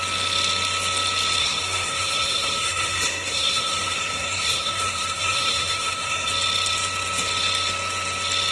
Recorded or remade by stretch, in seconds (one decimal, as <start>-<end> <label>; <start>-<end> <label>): 0.0-1.4 recorded; 1.4-6.3 remade; 6.3-8.5 recorded